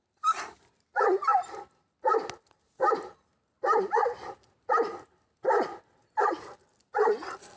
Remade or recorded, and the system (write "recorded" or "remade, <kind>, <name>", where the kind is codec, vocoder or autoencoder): recorded